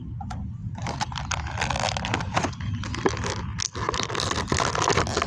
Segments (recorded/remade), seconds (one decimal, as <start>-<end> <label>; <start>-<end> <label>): 0.0-0.6 recorded; 0.6-2.8 remade; 2.8-3.5 recorded; 3.5-4.1 remade; 4.1-5.3 recorded